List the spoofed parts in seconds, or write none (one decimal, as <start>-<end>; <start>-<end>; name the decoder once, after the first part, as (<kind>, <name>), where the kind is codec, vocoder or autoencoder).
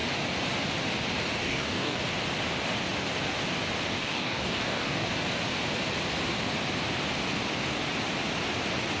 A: 1.4-2.0 (codec, DAC); 4.0-5.1